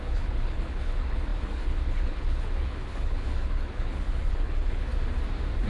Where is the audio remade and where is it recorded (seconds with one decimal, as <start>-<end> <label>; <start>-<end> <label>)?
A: 0.0-4.9 remade; 4.9-5.7 recorded